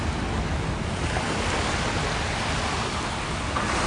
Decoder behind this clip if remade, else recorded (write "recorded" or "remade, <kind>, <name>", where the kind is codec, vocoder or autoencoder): recorded